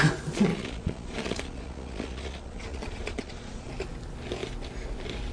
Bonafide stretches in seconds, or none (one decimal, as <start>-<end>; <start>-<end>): 0.0-0.5; 3.7-5.3